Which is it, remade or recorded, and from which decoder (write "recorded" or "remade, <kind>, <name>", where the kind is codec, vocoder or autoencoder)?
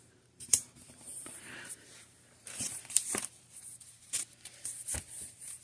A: remade, vocoder, BigVGAN v2